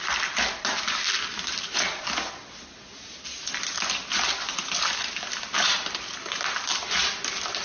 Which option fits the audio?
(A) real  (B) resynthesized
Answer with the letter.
A